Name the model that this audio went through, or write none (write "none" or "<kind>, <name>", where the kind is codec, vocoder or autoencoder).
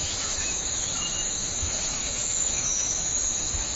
autoencoder, DAC-VAE